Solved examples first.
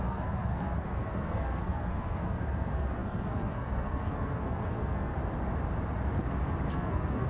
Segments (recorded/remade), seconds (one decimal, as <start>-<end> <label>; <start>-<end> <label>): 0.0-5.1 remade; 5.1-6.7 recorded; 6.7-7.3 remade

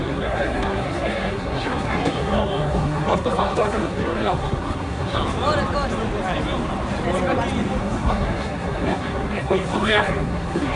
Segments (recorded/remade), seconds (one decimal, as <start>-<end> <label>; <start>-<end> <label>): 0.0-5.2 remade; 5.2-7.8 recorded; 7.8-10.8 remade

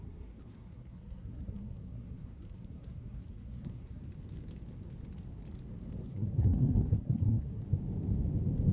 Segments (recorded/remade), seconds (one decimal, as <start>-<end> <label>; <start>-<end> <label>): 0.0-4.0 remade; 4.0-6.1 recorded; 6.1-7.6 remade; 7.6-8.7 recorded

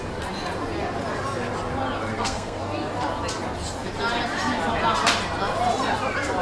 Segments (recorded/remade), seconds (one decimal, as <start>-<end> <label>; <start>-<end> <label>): 0.0-2.1 recorded; 2.1-2.6 remade; 2.6-6.4 recorded

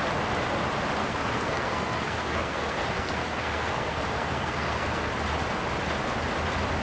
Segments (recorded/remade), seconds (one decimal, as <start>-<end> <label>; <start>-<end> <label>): 0.0-1.0 recorded; 1.0-5.1 remade; 5.1-6.8 recorded

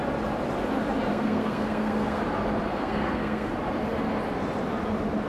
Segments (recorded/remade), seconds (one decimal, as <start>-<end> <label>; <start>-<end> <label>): 0.0-1.1 recorded; 1.1-2.2 remade; 2.2-2.7 recorded; 2.7-3.5 remade; 3.5-5.3 recorded